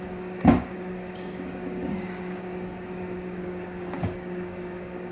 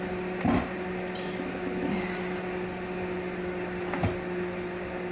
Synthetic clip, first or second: first